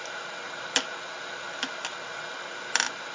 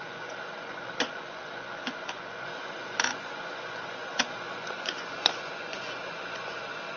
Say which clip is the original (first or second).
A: first